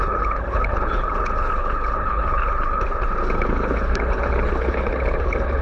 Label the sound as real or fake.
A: fake